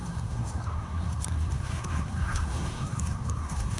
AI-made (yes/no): yes